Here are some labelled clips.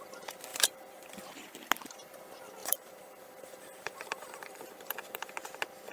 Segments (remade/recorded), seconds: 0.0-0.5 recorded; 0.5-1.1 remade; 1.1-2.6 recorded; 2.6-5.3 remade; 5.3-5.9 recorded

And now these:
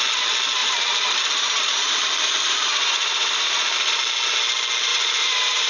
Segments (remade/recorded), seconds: 0.0-0.6 recorded; 0.6-4.0 remade; 4.0-4.9 recorded; 4.9-5.7 remade